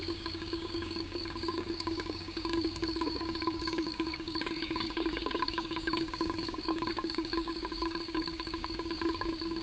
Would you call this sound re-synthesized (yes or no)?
yes